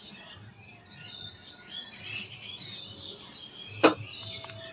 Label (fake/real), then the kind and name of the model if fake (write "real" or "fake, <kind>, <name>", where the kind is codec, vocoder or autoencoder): real